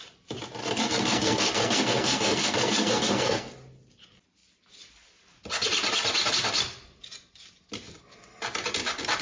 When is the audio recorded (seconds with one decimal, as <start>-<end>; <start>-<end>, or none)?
0.0-0.6; 3.5-9.2